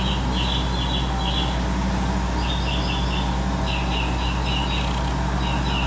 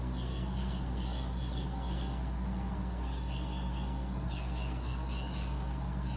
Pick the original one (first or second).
first